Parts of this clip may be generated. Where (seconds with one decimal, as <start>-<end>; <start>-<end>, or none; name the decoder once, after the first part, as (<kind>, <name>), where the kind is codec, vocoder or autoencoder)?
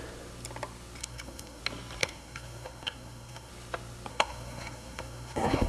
1.0-1.6 (codec, SNAC); 2.0-3.5; 4.1-5.7